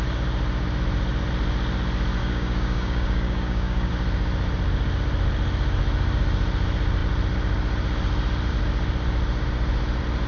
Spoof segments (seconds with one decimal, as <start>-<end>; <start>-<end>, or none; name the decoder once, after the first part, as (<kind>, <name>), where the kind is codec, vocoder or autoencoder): 2.2-3.9 (codec, DAC)